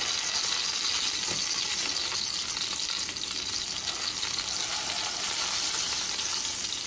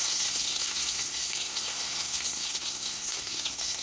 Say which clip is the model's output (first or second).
second